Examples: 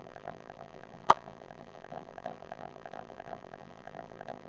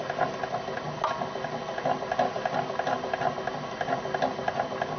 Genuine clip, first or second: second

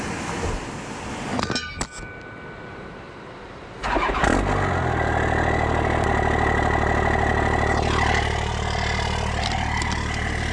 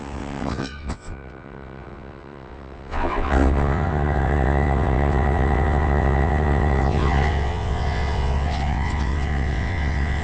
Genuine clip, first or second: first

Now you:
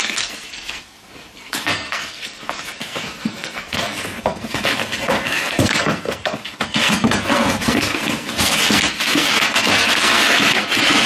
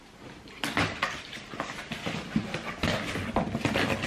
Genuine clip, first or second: second